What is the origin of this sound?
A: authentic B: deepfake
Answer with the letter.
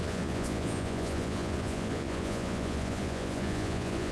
B